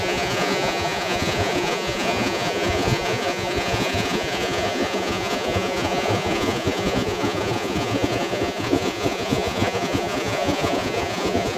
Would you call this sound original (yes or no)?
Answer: no